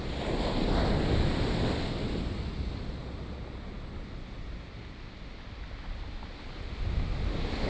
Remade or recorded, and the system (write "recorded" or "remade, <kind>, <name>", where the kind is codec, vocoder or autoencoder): recorded